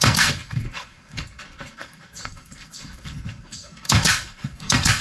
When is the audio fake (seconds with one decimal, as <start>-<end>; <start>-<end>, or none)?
0.0-5.0